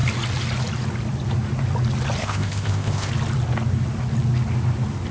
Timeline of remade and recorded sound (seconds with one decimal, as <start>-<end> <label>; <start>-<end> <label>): 0.0-2.2 recorded; 2.2-3.1 remade; 3.1-5.1 recorded